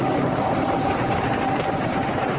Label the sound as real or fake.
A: fake